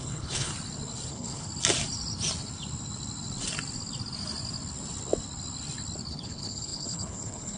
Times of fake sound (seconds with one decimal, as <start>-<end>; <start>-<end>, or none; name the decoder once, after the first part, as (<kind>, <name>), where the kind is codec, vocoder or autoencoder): 0.0-0.5 (codec, HILCodec); 1.1-1.5; 6.1-7.6